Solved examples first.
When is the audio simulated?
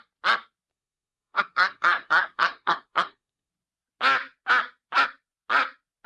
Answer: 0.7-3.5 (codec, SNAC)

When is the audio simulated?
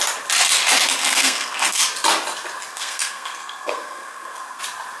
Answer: 1.0-1.8 (codec, SNAC); 2.7-4.6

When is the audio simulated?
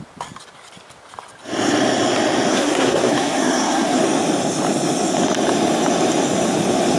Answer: 2.5-4.0 (codec, SNAC)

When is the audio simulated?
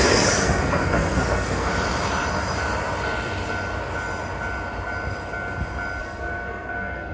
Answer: 0.0-1.7 (codec, SNAC); 6.0-7.1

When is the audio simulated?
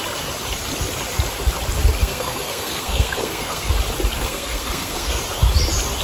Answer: 2.0-3.7 (codec, SNAC); 4.2-5.2